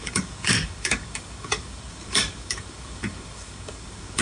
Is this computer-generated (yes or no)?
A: yes